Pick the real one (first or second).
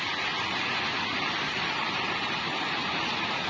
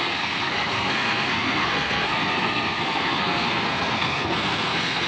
first